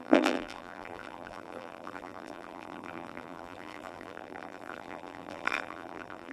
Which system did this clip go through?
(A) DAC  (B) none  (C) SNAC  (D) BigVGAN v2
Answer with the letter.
D